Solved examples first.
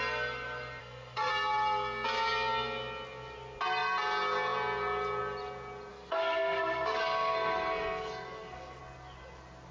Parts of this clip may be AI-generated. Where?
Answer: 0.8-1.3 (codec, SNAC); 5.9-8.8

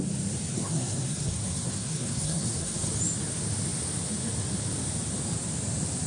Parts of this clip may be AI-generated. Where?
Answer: 0.5-2.9 (codec, SNAC)

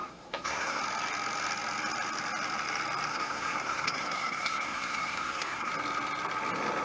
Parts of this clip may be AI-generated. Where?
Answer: 0.0-0.8 (codec, SNAC); 3.1-5.7

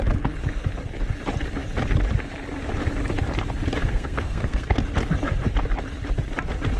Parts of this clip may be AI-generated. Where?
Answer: 3.8-4.8 (codec, SNAC)

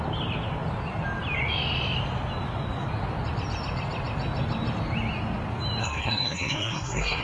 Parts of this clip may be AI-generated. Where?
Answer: 5.8-7.2 (codec, SNAC)